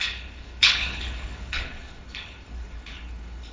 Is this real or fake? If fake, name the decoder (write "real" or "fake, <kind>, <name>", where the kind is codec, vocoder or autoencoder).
fake, codec, HILCodec